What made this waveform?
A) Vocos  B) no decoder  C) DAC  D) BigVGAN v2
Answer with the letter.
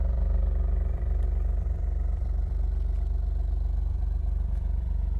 D